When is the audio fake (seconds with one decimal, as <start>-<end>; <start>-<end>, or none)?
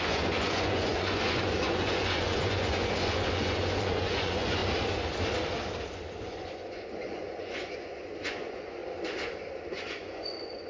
0.0-4.6; 6.2-8.8; 9.7-10.7